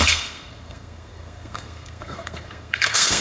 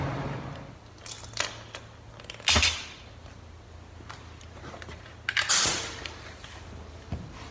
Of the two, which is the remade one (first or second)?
first